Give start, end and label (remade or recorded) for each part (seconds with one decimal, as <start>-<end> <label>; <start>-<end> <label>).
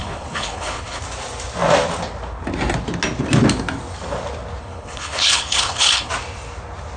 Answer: 0.0-1.0 remade; 1.0-4.6 recorded; 4.6-6.1 remade; 6.1-7.0 recorded